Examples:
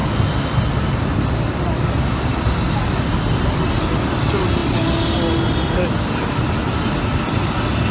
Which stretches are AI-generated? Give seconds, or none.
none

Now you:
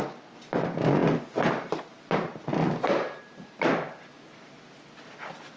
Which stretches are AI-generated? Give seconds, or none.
none

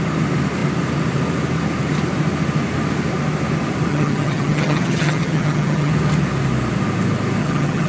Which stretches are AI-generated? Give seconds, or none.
3.9-5.9 (vocoder, HiFi-GAN); 7.4-7.9

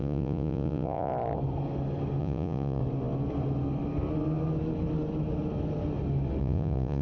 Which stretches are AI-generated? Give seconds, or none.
0.0-1.1 (vocoder, Vocos); 2.2-2.8; 6.4-7.0

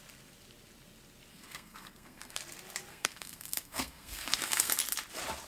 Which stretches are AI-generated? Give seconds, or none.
1.3-2.4 (codec, SNAC); 2.9-4.7